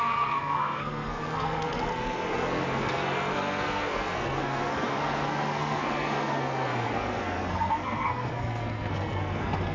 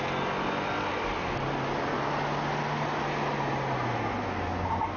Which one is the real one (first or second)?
second